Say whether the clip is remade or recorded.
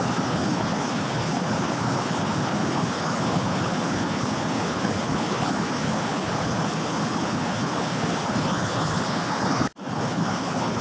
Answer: remade